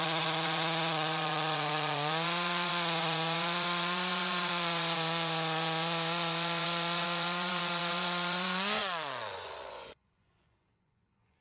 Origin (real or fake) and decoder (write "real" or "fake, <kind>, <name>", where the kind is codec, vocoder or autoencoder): fake, vocoder, Vocos